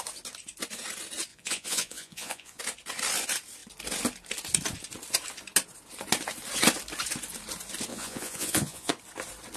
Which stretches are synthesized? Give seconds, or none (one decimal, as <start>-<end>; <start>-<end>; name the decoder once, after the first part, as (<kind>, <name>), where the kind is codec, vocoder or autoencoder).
1.3-2.6 (vocoder, Vocos); 7.9-8.9